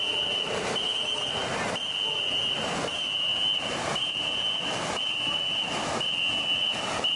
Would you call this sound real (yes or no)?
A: yes